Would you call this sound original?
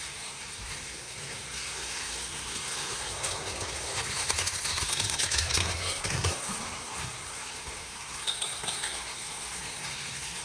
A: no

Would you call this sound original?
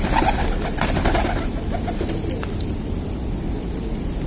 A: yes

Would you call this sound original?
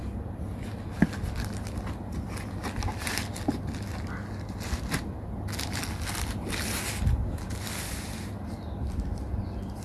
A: yes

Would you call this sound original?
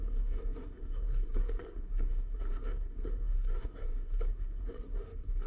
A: no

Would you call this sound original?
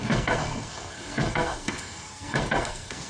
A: no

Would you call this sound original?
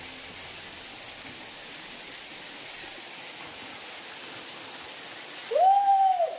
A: yes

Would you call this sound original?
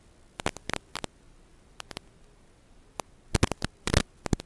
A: yes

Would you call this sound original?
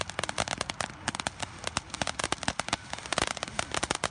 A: yes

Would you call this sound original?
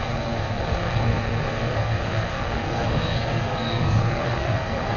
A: no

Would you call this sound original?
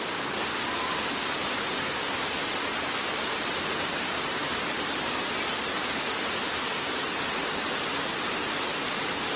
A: yes